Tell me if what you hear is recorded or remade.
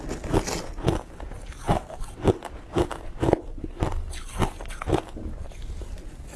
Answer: recorded